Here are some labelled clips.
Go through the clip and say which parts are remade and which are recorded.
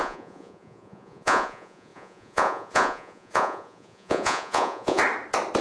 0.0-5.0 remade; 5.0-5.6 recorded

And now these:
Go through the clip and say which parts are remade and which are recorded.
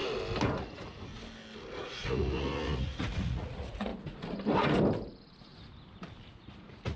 0.0-0.6 recorded; 0.6-1.1 remade; 1.1-1.7 recorded; 1.7-3.9 remade; 3.9-5.1 recorded; 5.1-5.5 remade; 5.5-6.3 recorded; 6.3-7.0 remade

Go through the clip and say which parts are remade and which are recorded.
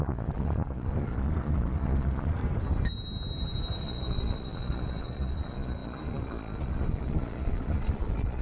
0.0-2.4 remade; 2.4-3.8 recorded; 3.8-8.4 remade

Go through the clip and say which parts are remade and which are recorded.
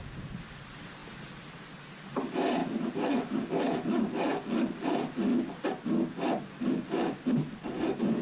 0.0-8.2 recorded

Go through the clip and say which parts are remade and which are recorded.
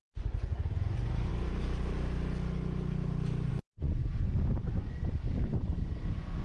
0.0-1.3 remade; 1.3-3.5 recorded; 3.5-4.0 remade; 4.0-4.7 recorded; 4.7-6.4 remade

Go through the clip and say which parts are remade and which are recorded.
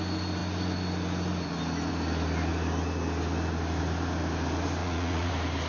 0.0-4.8 recorded; 4.8-5.3 remade; 5.3-5.7 recorded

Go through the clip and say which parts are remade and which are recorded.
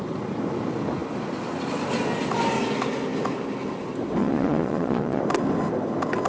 0.0-4.2 recorded; 4.2-5.2 remade; 5.2-6.3 recorded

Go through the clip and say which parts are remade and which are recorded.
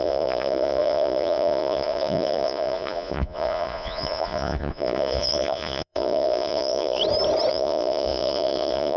0.0-7.0 remade; 7.0-7.5 recorded; 7.5-9.0 remade